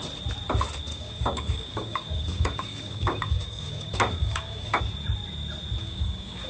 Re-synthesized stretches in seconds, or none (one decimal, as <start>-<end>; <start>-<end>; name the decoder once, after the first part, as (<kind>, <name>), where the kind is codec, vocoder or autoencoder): 0.9-4.8 (codec, DAC); 5.8-6.5